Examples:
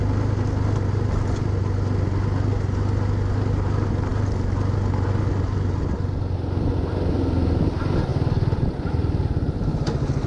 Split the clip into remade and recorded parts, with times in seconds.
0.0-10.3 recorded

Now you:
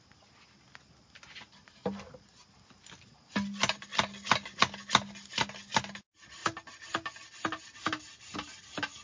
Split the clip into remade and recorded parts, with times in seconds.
0.0-9.0 recorded

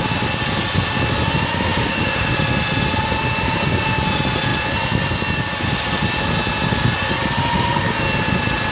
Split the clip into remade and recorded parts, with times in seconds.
0.0-1.7 recorded; 1.7-2.4 remade; 2.4-8.7 recorded

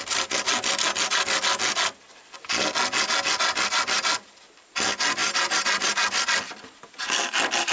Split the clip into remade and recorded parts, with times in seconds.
0.0-7.7 recorded

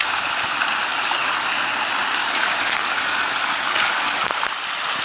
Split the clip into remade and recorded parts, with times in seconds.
0.0-0.9 recorded; 0.9-1.5 remade; 1.5-2.2 recorded; 2.2-4.3 remade; 4.3-5.0 recorded